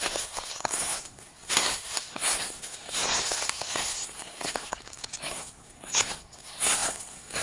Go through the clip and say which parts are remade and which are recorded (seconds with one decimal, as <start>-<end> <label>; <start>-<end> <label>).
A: 0.0-7.4 remade